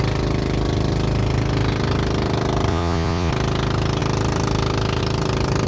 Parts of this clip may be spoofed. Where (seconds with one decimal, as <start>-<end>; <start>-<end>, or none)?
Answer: 2.7-3.3